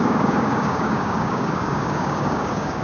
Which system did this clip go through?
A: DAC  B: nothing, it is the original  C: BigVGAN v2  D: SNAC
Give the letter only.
A